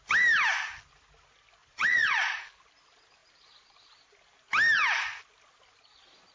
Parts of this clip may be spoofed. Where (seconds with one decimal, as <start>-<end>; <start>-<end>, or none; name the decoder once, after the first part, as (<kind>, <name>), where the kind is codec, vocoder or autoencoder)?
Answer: 1.6-2.4 (vocoder, Vocos)